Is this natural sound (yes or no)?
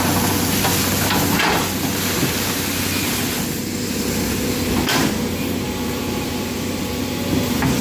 yes